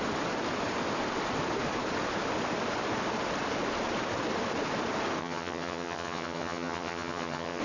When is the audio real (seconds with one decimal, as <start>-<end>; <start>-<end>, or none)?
0.0-5.2